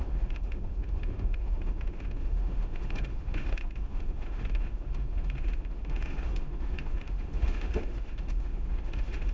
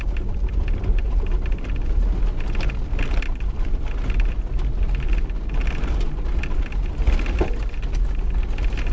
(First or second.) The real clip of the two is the second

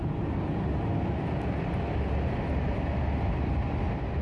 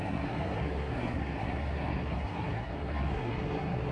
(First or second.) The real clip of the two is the first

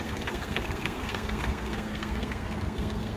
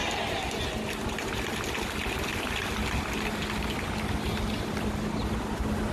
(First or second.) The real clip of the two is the second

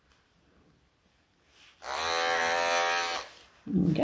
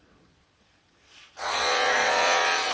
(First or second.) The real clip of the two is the first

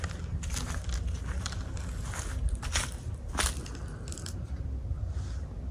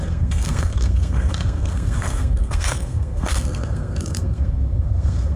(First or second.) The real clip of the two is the first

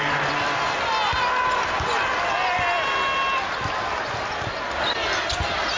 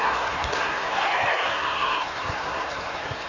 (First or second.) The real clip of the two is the first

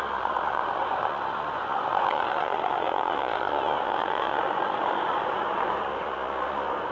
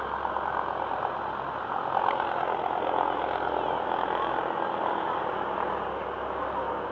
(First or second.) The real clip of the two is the second